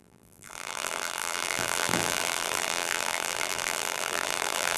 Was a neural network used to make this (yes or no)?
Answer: yes